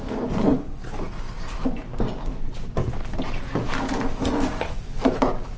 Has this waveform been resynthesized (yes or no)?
no